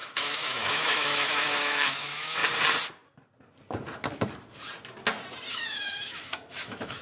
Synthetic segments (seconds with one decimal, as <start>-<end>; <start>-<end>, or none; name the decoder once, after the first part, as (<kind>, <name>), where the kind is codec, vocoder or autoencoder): 0.0-2.4 (autoencoder, DAC-VAE); 5.5-7.0